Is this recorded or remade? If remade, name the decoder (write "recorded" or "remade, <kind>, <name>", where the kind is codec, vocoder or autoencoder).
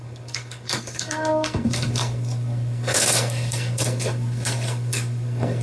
remade, codec, SNAC